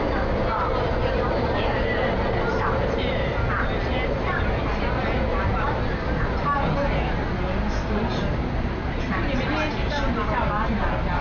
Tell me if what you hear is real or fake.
real